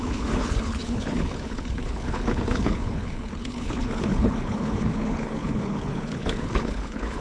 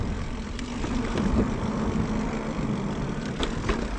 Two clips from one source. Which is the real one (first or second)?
second